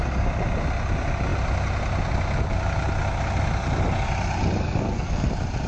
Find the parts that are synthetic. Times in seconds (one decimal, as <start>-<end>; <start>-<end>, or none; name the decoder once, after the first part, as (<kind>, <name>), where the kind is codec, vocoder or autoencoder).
4.6-5.3 (codec, SNAC)